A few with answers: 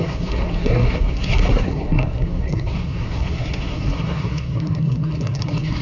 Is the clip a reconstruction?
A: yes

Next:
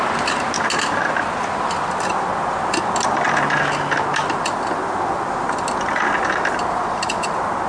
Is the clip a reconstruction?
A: no